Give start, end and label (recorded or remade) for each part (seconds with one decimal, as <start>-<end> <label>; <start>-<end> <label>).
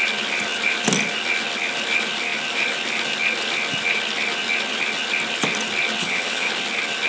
0.0-6.0 recorded; 6.0-6.5 remade; 6.5-7.1 recorded